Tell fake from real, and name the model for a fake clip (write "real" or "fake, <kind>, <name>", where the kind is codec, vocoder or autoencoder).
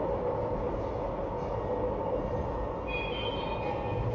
real